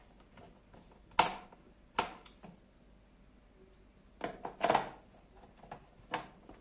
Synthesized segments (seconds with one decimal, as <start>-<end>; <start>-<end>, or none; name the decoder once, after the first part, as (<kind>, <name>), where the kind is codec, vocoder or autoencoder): none